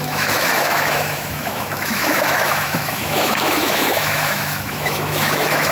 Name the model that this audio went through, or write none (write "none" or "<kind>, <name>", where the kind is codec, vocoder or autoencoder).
autoencoder, DAC-VAE